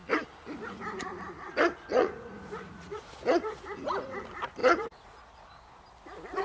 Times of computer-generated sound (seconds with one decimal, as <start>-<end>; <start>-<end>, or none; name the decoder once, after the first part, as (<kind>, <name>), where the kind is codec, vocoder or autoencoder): 1.9-3.6 (vocoder, Vocos); 4.6-5.5